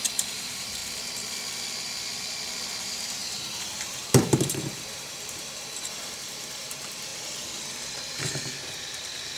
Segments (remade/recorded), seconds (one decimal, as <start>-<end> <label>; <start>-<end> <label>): 0.0-0.8 remade; 0.8-2.8 recorded; 2.8-9.4 remade